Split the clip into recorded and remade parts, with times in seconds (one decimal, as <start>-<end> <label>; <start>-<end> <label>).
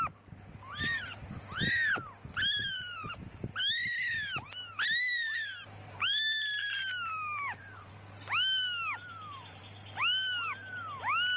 0.0-2.6 recorded; 2.6-3.5 remade; 3.5-5.1 recorded; 5.1-7.9 remade; 7.9-9.0 recorded; 9.0-9.6 remade; 9.6-11.4 recorded